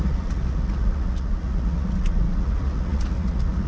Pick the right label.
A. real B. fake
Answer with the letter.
B